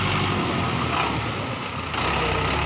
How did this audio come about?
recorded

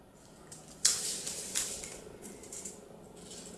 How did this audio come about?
recorded